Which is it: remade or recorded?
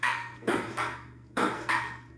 remade